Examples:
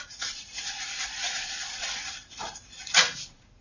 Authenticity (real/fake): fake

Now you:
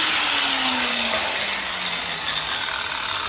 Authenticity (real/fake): real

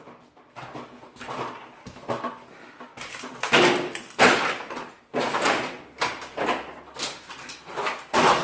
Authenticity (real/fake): real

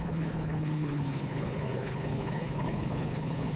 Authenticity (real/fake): fake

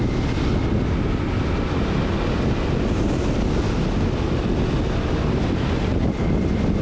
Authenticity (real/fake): real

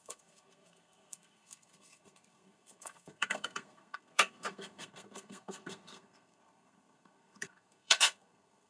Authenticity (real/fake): fake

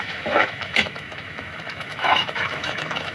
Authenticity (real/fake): fake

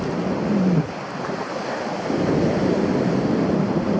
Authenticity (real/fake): real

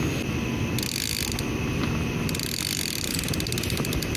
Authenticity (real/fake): real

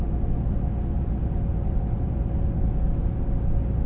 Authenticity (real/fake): real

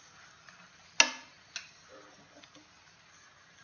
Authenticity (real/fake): real